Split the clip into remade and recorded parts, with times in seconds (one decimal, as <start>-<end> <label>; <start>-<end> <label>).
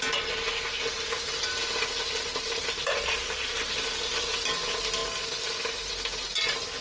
0.0-6.8 recorded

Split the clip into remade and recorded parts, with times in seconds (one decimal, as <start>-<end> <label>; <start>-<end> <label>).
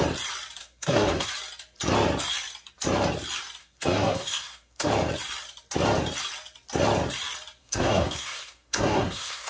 0.0-0.6 recorded; 0.6-1.3 remade; 1.3-3.6 recorded; 3.6-4.9 remade; 4.9-7.6 recorded; 7.6-9.5 remade